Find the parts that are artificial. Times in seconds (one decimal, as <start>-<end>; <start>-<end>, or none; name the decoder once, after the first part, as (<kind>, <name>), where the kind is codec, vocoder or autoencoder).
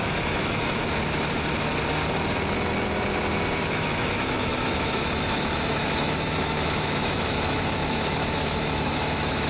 0.0-0.8 (autoencoder, DAC-VAE); 3.7-9.5